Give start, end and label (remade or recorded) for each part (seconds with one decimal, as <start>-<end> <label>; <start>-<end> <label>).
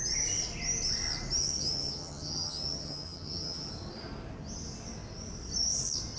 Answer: 0.0-1.4 recorded; 1.4-3.7 remade; 3.7-6.2 recorded